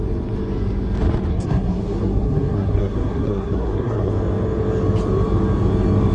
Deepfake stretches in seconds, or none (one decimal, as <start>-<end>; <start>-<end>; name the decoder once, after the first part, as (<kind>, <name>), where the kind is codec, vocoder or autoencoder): 1.3-4.1 (codec, SNAC)